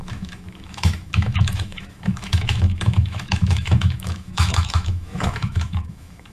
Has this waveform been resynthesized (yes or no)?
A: yes